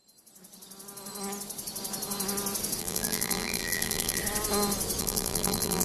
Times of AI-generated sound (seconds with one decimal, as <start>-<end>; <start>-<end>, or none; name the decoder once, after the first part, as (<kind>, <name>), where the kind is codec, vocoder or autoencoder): 2.8-4.2 (vocoder, BigVGAN v2); 5.0-5.8